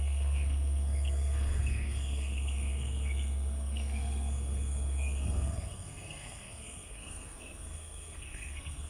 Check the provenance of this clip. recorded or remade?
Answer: remade